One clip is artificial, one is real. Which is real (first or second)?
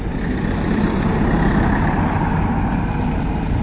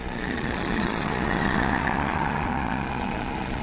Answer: first